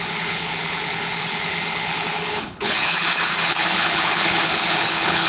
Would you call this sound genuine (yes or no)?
no